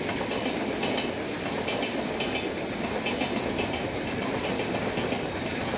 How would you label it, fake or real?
real